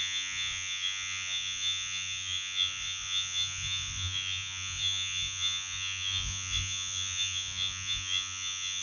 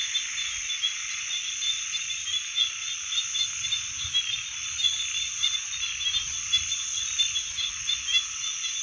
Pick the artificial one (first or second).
first